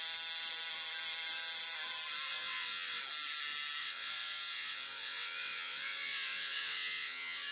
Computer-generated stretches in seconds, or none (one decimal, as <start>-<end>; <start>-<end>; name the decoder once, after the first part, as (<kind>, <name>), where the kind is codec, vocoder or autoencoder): 2.3-3.0 (vocoder, WaveNeXt); 3.8-7.5